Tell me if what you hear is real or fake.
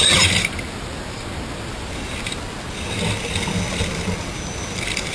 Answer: real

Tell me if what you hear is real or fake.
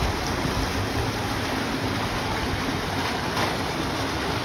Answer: real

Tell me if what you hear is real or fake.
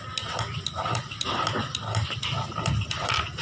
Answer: real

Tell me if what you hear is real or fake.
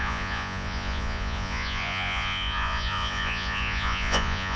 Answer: fake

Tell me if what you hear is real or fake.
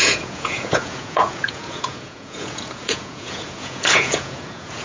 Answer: fake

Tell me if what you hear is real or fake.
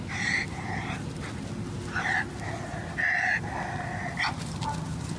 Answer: real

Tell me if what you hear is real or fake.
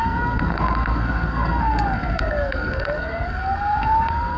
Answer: fake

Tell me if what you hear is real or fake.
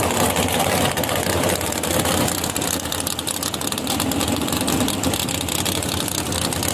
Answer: real